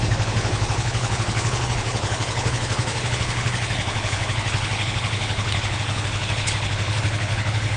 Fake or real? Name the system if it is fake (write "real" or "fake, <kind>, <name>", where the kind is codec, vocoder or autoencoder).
fake, codec, HILCodec